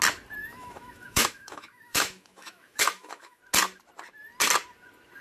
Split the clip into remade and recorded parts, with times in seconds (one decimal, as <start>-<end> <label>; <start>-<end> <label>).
0.0-0.4 recorded; 0.4-3.4 remade; 3.4-5.2 recorded